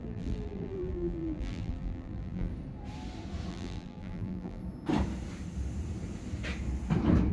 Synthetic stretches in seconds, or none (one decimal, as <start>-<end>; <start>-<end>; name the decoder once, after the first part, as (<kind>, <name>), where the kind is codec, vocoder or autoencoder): 0.0-2.5 (vocoder, BigVGAN v2); 3.5-4.6